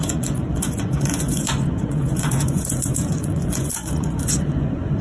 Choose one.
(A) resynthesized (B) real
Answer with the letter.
A